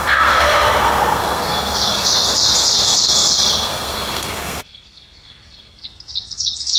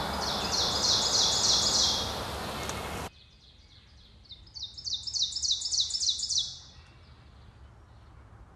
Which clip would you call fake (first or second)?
first